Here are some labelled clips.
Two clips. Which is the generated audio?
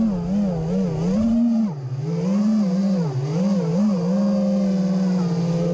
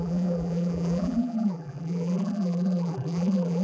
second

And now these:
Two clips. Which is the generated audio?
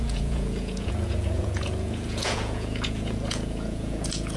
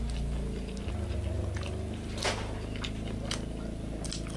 first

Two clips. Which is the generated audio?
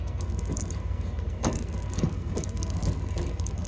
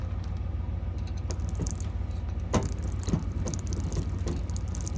first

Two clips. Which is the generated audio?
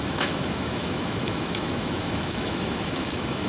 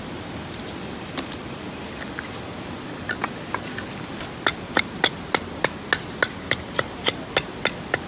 first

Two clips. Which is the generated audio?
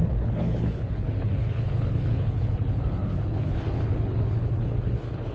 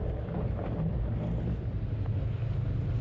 first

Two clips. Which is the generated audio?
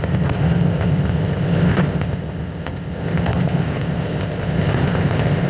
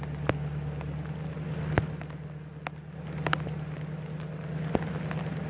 first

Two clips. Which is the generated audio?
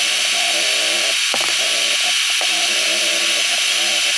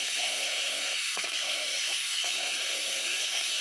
second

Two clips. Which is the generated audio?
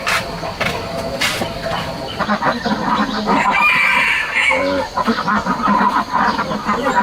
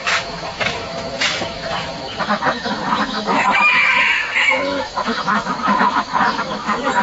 second